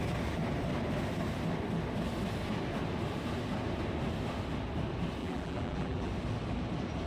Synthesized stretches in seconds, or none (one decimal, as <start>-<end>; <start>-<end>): 5.2-6.1

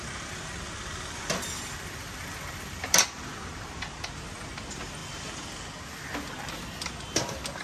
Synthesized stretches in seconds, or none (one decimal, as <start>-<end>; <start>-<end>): none

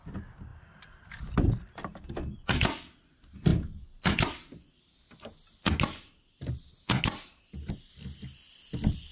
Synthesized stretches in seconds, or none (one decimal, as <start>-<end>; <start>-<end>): none

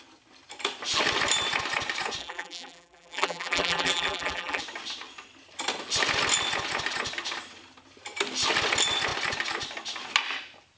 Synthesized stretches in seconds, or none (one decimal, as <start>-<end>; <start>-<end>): 2.2-4.6